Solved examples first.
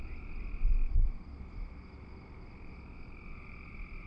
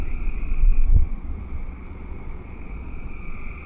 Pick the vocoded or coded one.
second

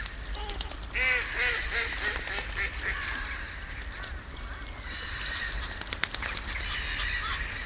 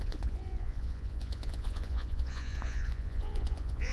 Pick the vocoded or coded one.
second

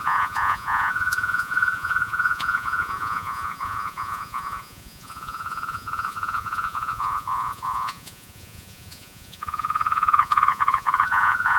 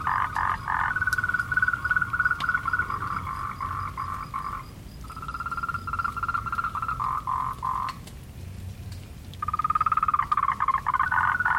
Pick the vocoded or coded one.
first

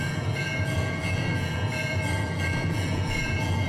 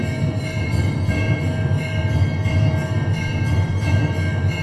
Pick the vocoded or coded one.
first